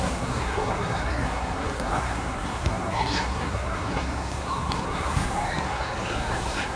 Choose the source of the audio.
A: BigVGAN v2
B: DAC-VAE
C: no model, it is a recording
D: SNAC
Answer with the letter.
D